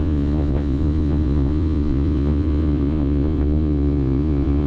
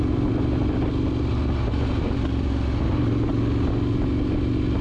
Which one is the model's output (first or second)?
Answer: first